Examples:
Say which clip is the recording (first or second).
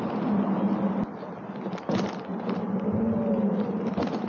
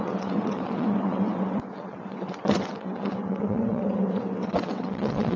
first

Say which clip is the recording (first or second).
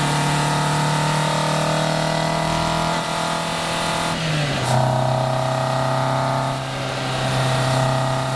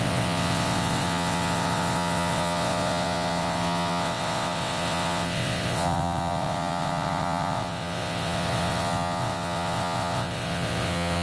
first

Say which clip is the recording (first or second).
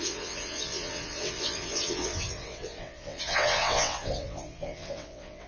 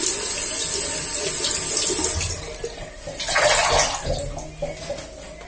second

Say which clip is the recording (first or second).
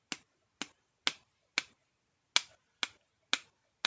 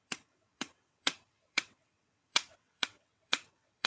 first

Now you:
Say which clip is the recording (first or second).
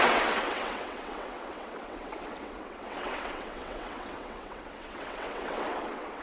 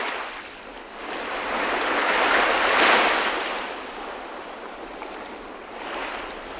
second